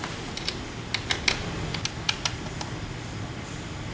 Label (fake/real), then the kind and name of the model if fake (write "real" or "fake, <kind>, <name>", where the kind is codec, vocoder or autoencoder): real